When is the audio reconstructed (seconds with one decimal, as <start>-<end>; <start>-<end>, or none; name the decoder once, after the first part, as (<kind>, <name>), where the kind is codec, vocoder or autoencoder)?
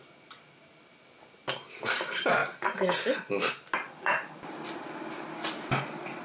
0.0-2.4 (vocoder, BigVGAN v2); 4.4-6.2